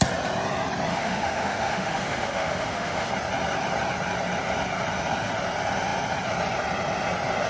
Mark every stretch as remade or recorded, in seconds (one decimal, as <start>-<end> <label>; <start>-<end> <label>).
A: 0.0-0.9 recorded; 0.9-3.1 remade; 3.1-7.5 recorded